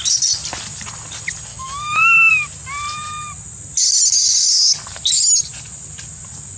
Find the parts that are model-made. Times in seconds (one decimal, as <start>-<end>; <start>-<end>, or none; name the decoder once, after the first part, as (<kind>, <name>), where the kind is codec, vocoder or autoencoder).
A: 1.5-2.3 (autoencoder, DAC-VAE)